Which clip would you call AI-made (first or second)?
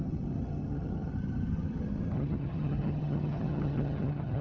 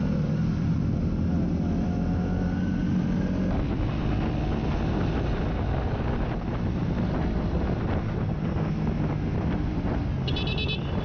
first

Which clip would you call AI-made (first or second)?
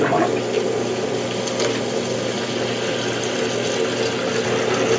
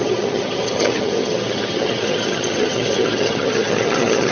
second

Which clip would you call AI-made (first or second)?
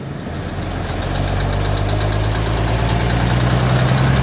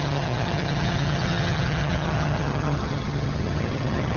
second